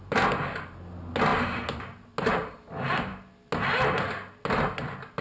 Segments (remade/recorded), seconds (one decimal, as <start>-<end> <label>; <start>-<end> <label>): 0.0-5.2 recorded